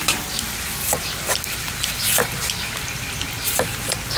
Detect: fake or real real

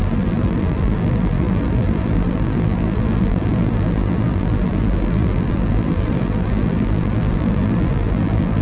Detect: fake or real fake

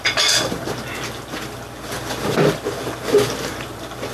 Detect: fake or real real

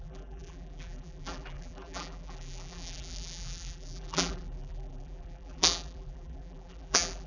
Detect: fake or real fake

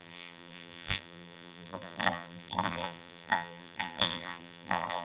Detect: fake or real fake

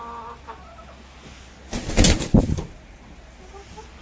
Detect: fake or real real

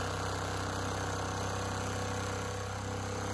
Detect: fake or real real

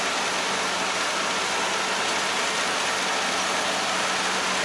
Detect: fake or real real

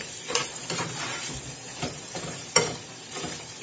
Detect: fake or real fake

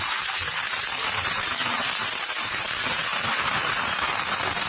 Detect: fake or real fake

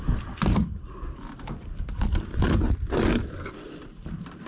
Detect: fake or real fake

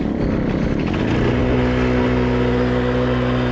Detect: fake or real real